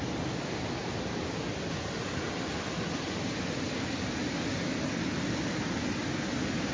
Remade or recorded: recorded